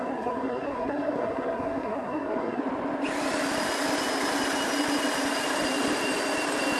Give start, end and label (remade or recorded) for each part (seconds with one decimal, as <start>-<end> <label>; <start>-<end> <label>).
0.0-2.6 remade; 2.6-6.8 recorded